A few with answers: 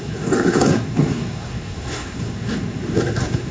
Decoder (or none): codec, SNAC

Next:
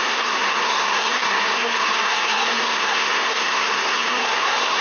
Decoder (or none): codec, SNAC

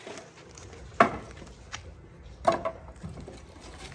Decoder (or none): none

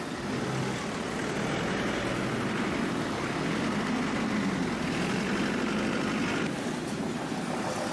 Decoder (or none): none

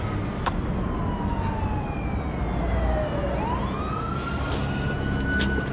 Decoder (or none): none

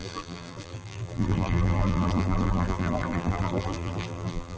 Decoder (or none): vocoder, BigVGAN v2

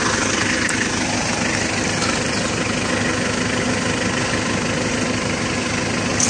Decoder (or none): none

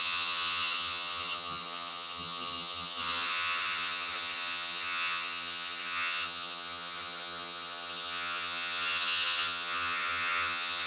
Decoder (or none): vocoder, HiFi-GAN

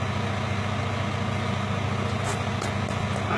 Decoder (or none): none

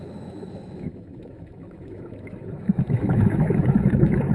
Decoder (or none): autoencoder, DAC-VAE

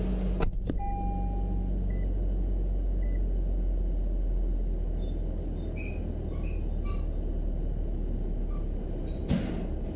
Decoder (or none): none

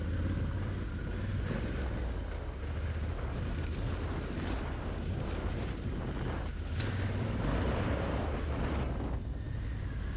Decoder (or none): none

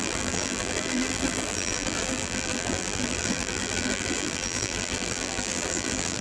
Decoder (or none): vocoder, BigVGAN v2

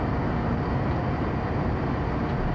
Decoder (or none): none